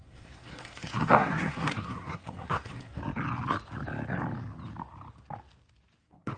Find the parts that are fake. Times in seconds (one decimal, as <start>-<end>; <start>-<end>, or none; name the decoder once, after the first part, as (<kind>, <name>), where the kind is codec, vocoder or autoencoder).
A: 0.0-3.0 (codec, SNAC); 6.0-6.4